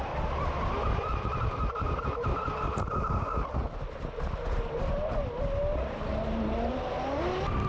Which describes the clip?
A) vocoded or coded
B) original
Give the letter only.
B